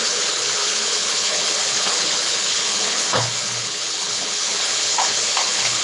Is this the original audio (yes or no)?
no